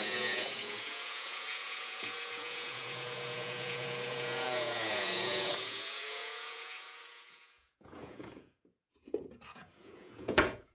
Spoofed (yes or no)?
yes